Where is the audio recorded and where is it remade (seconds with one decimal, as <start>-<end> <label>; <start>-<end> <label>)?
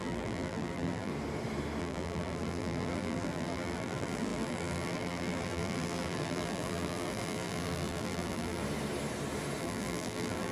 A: 0.0-1.1 remade; 1.1-1.8 recorded; 1.8-8.6 remade; 8.6-9.6 recorded; 9.6-10.5 remade